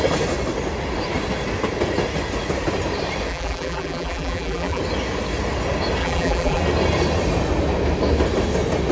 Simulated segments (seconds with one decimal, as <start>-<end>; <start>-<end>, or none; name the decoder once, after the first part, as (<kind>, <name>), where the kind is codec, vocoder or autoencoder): 3.3-4.8 (vocoder, BigVGAN v2); 6.0-6.6